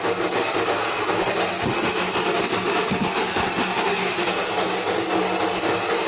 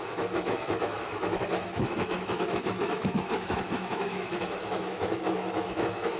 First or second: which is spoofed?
second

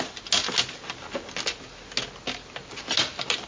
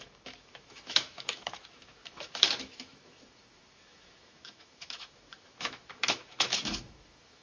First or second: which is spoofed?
second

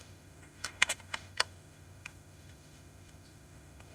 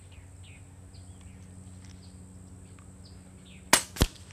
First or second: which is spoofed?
first